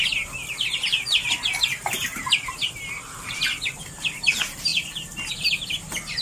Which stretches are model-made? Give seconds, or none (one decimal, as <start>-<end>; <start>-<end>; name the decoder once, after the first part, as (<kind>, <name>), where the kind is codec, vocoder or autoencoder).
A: none

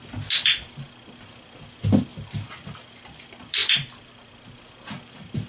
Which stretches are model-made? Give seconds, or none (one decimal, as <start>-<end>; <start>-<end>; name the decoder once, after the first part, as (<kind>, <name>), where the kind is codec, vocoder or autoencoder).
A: none

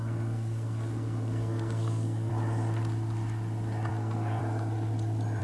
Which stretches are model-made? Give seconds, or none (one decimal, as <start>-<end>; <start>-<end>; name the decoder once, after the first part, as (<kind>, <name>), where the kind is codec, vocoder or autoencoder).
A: 0.0-2.3 (codec, SNAC); 3.9-4.4